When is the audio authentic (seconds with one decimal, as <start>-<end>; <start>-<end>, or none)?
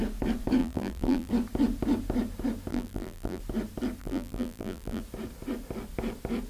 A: 0.0-0.6; 1.3-2.7; 3.4-4.0; 5.0-6.5